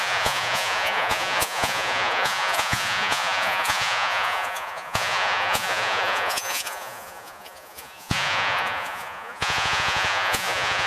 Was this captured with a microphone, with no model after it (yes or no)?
no